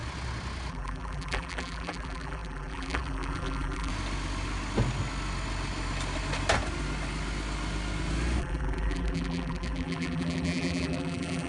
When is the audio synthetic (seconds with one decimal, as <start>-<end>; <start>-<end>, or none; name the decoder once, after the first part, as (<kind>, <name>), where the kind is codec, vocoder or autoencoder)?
0.7-3.9 (vocoder, BigVGAN v2); 8.4-11.5